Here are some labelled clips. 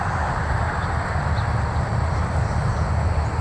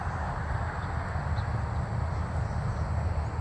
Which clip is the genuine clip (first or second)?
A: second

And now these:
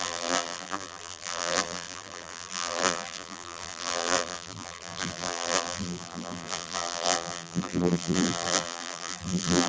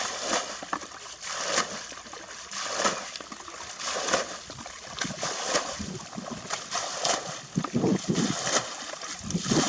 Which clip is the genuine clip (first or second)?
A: second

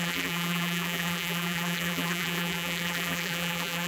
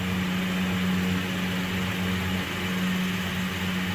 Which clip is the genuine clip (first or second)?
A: second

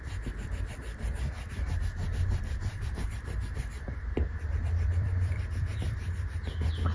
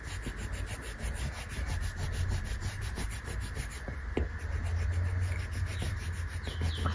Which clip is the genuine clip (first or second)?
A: second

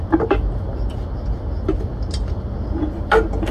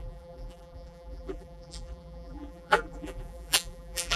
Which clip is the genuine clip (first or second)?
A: first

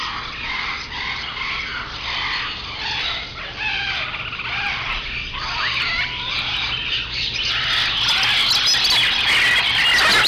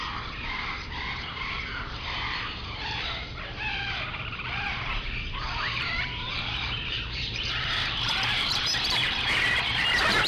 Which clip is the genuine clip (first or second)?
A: first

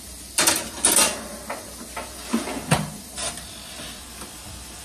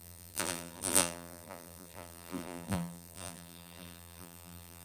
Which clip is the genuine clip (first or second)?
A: first